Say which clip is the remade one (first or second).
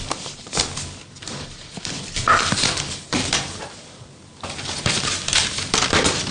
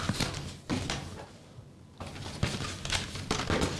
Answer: first